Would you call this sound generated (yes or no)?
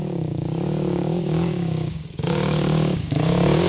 yes